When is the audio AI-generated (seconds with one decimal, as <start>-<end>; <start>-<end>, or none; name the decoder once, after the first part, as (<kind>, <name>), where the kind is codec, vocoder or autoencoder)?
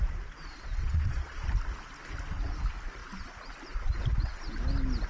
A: 0.8-1.5 (vocoder, Vocos)